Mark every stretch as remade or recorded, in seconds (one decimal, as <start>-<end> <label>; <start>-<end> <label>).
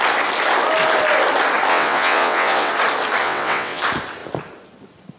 0.0-1.7 recorded; 1.7-2.7 remade; 2.7-3.2 recorded; 3.2-3.8 remade; 3.8-5.2 recorded